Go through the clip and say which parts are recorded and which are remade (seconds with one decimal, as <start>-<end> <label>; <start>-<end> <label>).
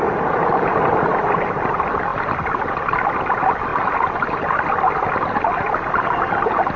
0.0-3.7 remade; 3.7-5.7 recorded; 5.7-6.8 remade